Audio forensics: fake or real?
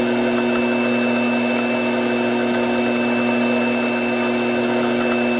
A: real